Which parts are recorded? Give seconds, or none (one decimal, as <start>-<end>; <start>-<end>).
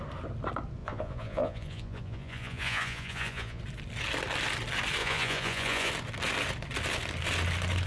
0.0-0.8; 3.6-5.0; 5.9-7.9